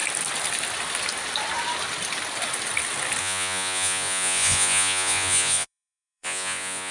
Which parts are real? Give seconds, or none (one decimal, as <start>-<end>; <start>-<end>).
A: 0.0-3.2